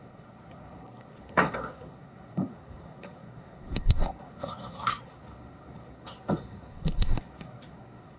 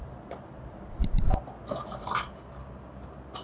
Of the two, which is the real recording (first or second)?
second